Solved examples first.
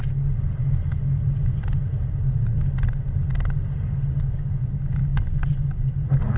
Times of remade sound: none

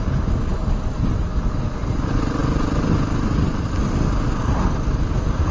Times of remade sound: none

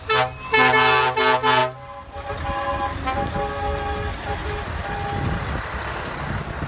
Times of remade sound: none

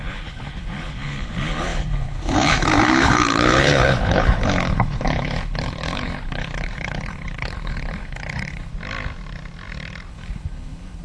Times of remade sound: 0.0-8.7 (codec, HILCodec); 10.1-11.0

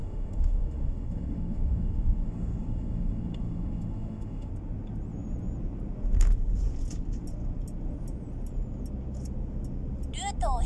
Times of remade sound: 0.0-4.5 (autoencoder, DAC-VAE)